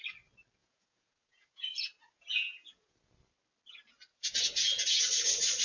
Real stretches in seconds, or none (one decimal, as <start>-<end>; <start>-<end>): 0.0-0.6; 3.1-4.1; 5.0-5.6